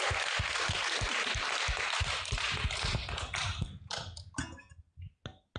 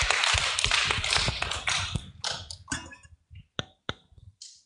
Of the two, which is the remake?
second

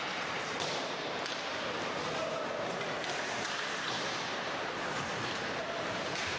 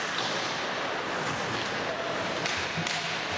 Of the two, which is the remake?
first